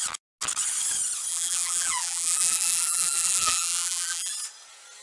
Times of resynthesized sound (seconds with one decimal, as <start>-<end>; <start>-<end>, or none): 1.3-4.3

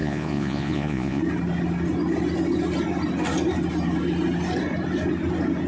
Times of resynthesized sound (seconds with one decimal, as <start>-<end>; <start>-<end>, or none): 0.0-1.2

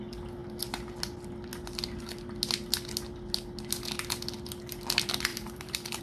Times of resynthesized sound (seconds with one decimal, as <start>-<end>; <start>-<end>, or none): 5.3-6.0

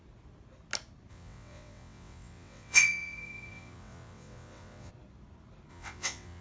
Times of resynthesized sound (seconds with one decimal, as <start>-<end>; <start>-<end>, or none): 1.1-4.9; 5.7-6.4

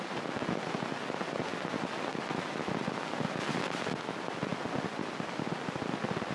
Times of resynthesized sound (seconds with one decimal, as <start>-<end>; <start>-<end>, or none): none

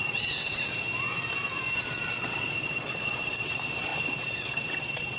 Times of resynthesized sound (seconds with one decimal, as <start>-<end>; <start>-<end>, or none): 0.0-0.7; 1.8-5.2

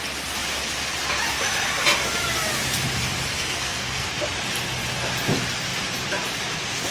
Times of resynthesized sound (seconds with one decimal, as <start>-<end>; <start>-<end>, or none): 3.4-4.1